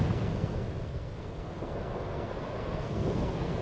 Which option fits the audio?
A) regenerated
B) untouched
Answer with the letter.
A